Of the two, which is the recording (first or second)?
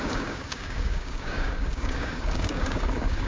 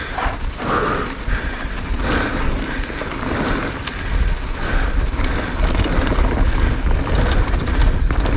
second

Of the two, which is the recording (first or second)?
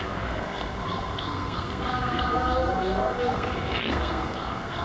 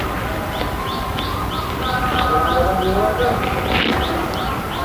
second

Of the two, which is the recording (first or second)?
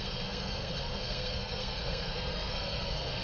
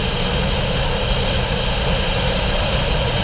second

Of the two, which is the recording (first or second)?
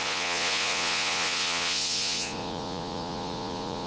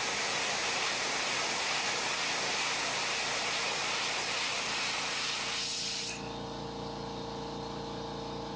second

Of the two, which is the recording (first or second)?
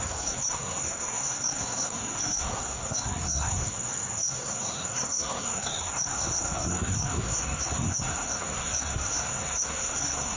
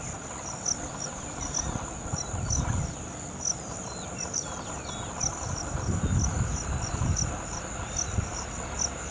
second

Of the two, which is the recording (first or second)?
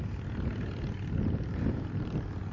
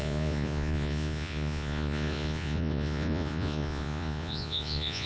first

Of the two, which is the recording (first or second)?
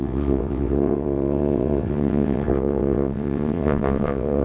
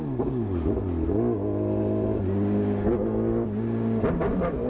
second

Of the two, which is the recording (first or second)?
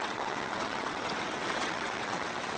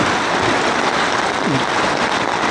second